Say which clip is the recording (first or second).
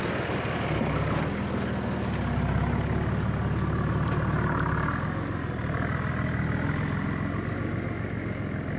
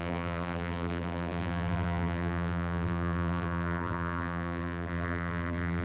first